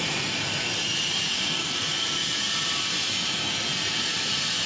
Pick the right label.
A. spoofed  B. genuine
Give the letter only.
A